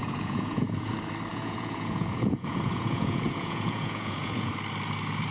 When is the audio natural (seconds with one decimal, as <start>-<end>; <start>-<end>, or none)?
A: 0.9-1.3; 4.5-5.3